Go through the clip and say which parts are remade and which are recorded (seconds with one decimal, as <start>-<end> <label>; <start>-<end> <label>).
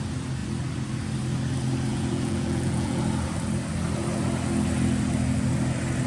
0.0-1.9 recorded; 1.9-3.0 remade; 3.0-6.1 recorded